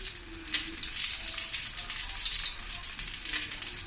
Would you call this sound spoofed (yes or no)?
no